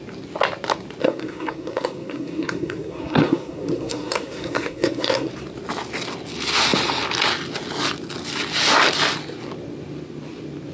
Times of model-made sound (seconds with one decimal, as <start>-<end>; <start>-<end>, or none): 1.0-5.3